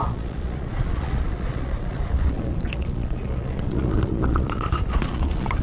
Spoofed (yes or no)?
yes